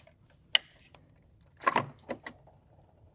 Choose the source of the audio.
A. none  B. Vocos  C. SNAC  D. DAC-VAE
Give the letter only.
A